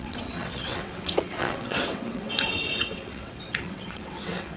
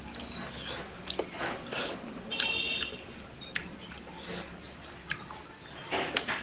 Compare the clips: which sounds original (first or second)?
second